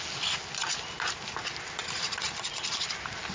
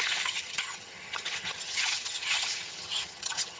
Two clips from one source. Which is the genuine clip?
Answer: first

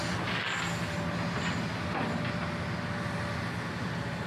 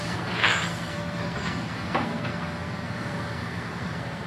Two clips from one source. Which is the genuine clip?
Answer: first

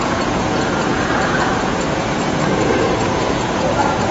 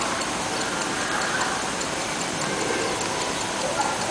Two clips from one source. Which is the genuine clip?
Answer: second